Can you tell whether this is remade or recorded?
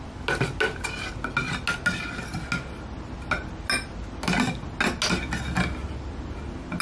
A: recorded